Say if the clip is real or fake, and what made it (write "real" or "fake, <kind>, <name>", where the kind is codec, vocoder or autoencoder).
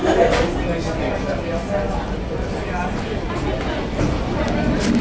real